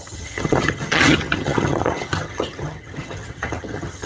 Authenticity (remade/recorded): remade